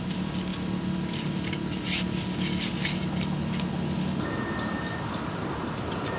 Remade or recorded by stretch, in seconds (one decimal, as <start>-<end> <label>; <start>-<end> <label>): 0.0-6.2 recorded